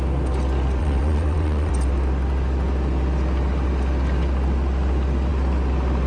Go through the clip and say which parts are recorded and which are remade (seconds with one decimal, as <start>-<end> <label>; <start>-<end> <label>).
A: 0.0-0.8 recorded; 0.8-1.7 remade; 1.7-6.1 recorded